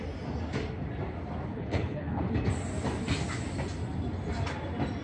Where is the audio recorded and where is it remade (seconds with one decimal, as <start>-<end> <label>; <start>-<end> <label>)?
0.0-1.5 recorded; 1.5-2.3 remade; 2.3-5.0 recorded